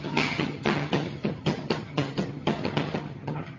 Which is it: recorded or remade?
remade